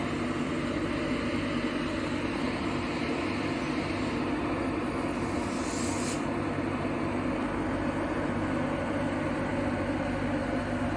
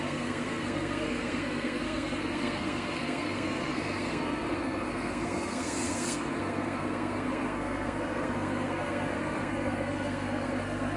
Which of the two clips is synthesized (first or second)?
second